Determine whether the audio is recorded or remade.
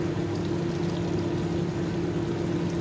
recorded